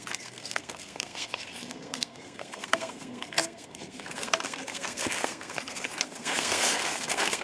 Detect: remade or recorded remade